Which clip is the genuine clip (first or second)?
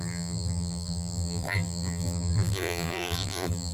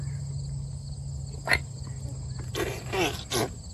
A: second